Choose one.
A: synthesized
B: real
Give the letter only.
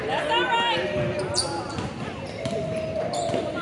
B